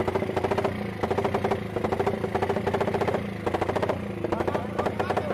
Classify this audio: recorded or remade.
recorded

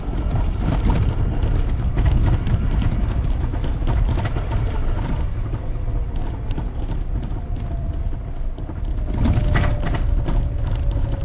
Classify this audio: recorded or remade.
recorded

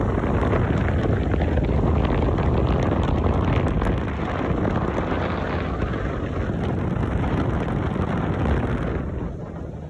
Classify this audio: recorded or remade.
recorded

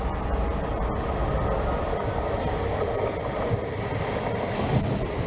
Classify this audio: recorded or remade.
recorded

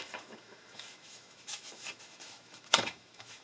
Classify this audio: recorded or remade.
remade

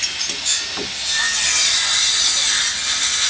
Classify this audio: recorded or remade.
recorded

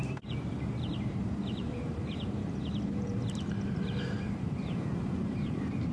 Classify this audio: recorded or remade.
remade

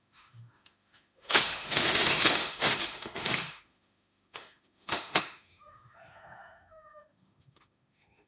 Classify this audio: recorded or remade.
remade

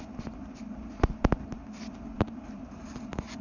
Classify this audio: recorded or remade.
recorded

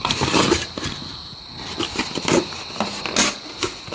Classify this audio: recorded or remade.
recorded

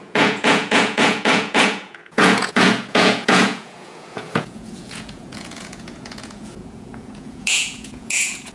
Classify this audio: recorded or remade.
remade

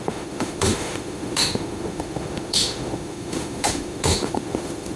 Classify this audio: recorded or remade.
remade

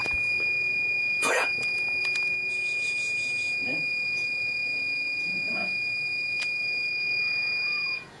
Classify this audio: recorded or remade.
remade